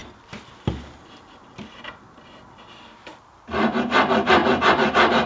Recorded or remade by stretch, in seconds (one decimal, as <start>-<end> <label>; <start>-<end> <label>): 0.0-5.3 recorded